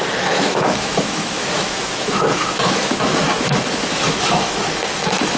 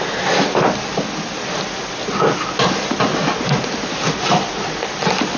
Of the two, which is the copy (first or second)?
first